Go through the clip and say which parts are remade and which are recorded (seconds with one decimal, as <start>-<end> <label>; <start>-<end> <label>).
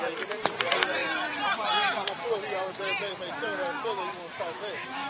0.0-4.3 recorded; 4.3-5.1 remade